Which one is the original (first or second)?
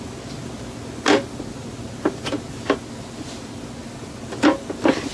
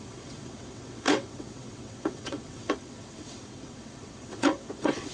first